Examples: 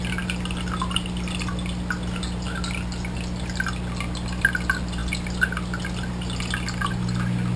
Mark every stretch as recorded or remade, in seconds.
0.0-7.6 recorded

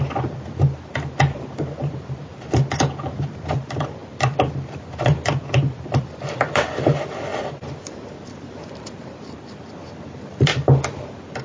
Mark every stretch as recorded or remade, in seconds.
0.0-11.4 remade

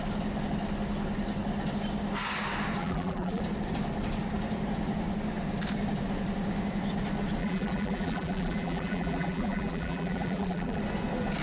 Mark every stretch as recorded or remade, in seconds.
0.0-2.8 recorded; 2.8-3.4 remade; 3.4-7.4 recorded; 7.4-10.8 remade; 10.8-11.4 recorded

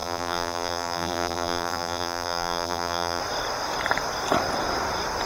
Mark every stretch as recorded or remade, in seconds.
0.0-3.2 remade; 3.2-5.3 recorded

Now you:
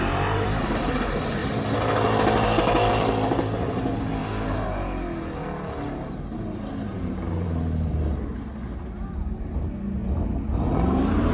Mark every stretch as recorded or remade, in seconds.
0.0-1.4 remade; 1.4-2.9 recorded; 2.9-4.2 remade; 4.2-7.0 recorded; 7.0-10.0 remade; 10.0-10.7 recorded; 10.7-11.3 remade

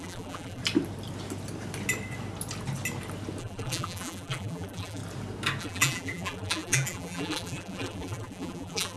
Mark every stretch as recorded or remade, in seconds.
0.0-0.6 remade; 0.6-3.4 recorded; 3.4-5.0 remade; 5.0-5.6 recorded; 5.6-9.0 remade